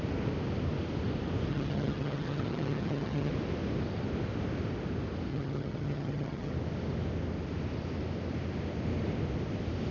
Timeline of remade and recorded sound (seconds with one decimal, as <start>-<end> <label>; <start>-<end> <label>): 0.0-1.5 recorded; 1.5-3.3 remade; 3.3-5.3 recorded; 5.3-6.5 remade; 6.5-9.9 recorded